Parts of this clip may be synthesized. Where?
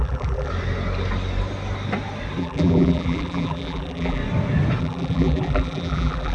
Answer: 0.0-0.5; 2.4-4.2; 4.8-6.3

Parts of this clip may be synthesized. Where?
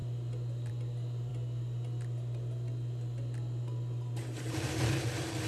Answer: none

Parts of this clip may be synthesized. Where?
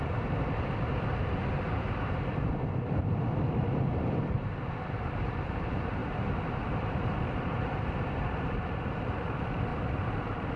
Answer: 0.0-10.6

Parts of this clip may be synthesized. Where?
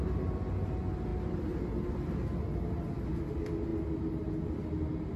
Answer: none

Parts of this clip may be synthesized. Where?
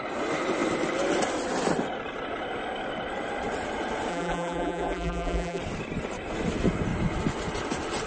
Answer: 4.1-5.6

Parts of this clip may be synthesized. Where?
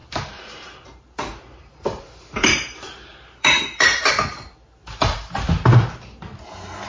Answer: 0.0-4.1; 4.8-5.3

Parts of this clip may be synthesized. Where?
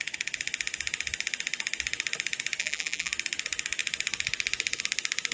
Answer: 2.6-3.1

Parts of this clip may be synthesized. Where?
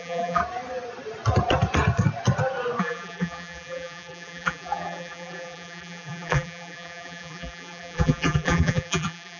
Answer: 0.0-0.4; 2.8-9.4